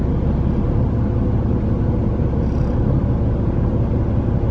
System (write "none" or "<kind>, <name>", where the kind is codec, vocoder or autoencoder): none